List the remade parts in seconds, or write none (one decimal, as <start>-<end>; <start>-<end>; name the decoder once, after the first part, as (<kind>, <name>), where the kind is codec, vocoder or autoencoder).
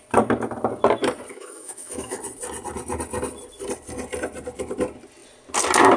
1.3-2.2 (autoencoder, DAC-VAE)